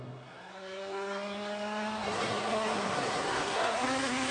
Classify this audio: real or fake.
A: fake